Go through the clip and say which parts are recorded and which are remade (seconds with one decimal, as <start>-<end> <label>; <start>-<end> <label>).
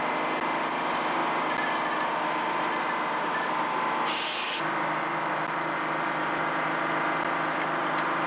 0.0-8.3 recorded